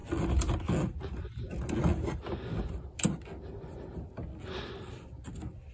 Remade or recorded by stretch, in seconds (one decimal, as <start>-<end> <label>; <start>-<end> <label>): 0.0-5.7 recorded